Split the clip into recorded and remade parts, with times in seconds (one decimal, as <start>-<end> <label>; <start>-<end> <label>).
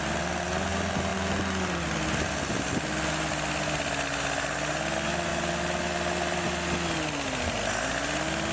0.0-8.5 recorded